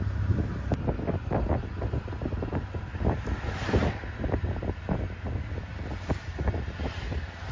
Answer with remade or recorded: recorded